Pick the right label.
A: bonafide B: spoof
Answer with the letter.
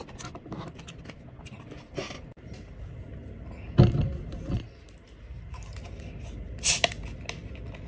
A